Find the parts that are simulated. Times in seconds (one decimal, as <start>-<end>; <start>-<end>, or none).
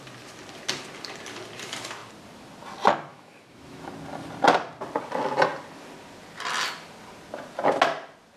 3.1-3.9